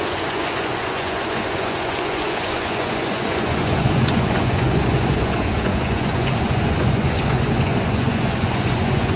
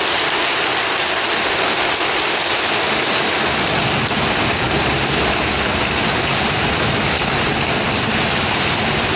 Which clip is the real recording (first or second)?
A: second